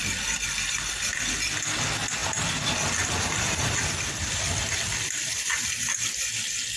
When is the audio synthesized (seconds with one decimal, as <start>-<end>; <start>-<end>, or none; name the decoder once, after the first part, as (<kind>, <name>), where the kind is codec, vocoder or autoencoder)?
none